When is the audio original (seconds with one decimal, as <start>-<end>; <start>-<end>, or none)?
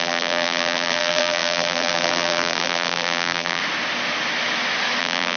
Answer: 3.6-5.0